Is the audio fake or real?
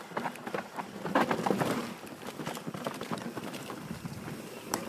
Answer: fake